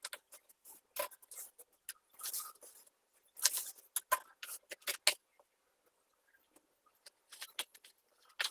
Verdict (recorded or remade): recorded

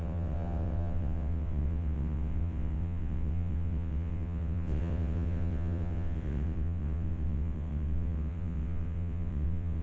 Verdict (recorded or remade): remade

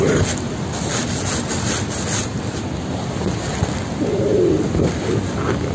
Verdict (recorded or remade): recorded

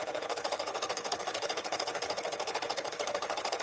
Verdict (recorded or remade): remade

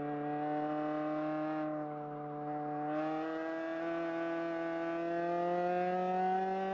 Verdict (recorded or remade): recorded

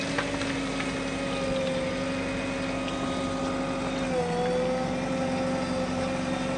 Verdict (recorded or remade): recorded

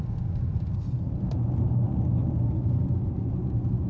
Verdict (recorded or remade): recorded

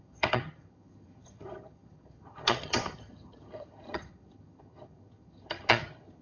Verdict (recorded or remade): remade